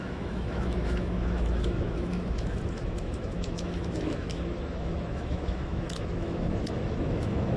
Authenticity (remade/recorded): remade